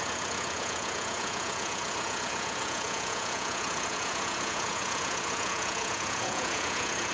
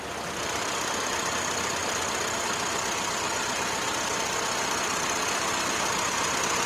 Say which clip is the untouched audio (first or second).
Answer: second